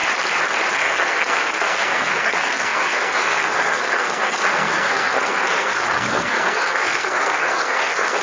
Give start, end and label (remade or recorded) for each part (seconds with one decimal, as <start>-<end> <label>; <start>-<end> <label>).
0.0-0.7 recorded; 0.7-8.2 remade